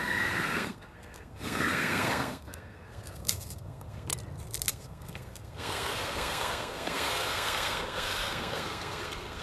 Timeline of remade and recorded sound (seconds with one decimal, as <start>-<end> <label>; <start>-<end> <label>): 0.0-4.1 remade; 4.1-4.7 recorded; 4.7-9.4 remade